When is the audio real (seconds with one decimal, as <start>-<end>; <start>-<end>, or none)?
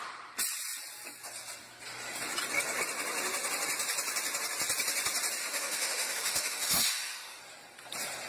0.0-5.4; 7.4-8.3